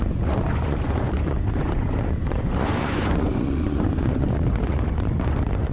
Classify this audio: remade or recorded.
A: remade